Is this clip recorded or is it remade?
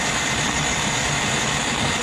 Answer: remade